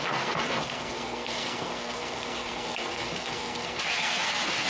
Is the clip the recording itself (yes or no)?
no